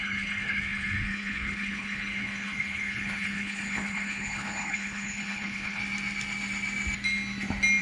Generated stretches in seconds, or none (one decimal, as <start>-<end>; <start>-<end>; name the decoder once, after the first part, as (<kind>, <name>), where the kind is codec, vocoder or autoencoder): 0.0-5.8 (codec, HILCodec)